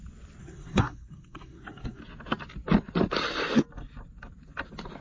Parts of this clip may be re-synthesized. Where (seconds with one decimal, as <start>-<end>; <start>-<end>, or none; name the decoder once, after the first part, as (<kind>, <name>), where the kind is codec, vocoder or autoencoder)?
0.4-2.0 (codec, SNAC)